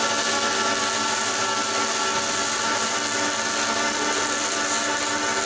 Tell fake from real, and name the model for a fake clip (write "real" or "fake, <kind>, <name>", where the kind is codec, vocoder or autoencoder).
real